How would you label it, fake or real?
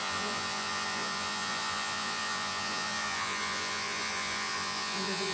fake